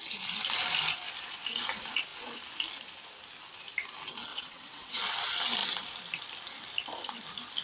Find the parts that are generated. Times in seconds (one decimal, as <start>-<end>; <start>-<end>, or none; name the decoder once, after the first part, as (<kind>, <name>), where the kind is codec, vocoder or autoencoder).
4.3-5.0 (vocoder, WaveNeXt)